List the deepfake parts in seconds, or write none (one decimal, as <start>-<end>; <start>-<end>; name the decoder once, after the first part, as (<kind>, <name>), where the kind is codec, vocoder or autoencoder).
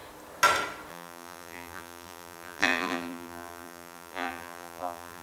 0.9-5.2 (vocoder, BigVGAN v2)